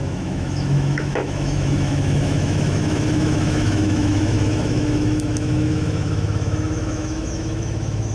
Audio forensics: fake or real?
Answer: fake